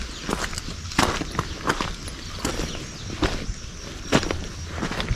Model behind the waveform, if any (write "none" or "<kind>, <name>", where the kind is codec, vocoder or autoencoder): none